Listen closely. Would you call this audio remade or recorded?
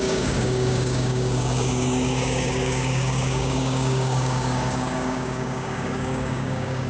remade